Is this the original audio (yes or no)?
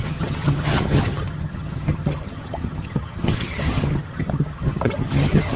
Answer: no